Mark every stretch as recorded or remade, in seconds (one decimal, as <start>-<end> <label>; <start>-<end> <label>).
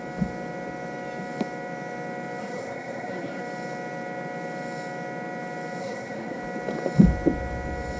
0.0-2.4 recorded; 2.4-3.4 remade; 3.4-5.8 recorded; 5.8-6.4 remade; 6.4-8.0 recorded